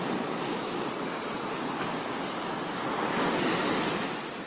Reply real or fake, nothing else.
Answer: real